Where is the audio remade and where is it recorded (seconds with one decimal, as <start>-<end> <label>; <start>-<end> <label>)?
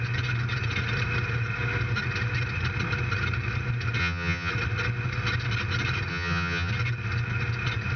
0.0-4.0 recorded; 4.0-4.5 remade; 4.5-6.1 recorded; 6.1-6.7 remade; 6.7-8.0 recorded